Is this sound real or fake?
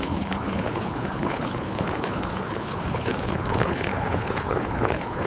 fake